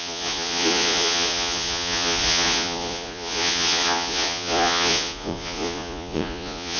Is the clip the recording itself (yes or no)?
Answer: no